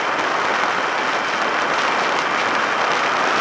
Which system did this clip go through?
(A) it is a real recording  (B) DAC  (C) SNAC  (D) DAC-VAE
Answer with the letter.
A